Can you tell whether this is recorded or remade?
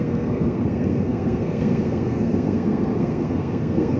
remade